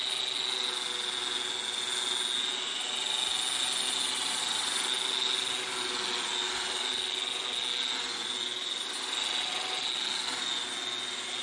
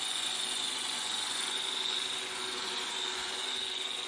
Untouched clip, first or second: first